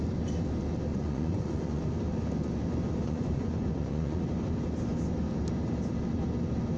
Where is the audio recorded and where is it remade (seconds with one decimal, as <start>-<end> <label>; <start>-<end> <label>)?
0.0-0.9 recorded; 0.9-1.8 remade; 1.8-3.0 recorded; 3.0-4.2 remade; 4.2-6.8 recorded